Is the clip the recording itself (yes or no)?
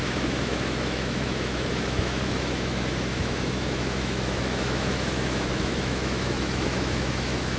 no